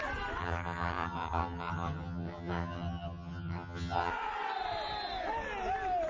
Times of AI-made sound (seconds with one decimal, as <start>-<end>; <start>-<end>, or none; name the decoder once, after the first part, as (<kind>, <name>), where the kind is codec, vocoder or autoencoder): 0.4-4.1 (vocoder, HiFi-GAN)